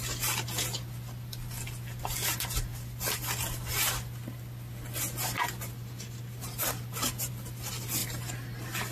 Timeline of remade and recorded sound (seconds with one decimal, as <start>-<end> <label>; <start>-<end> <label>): 0.0-8.9 recorded